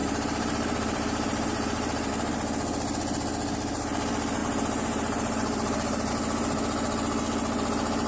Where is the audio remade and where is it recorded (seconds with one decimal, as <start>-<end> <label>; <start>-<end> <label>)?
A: 0.0-2.1 remade; 2.1-4.4 recorded; 4.4-6.1 remade; 6.1-8.1 recorded